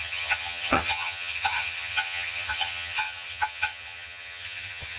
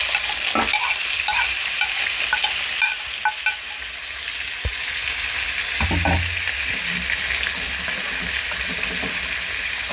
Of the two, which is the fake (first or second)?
first